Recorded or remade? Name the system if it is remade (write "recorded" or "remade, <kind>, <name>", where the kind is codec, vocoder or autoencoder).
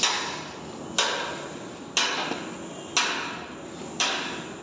recorded